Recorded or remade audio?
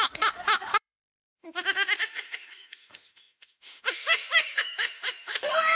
remade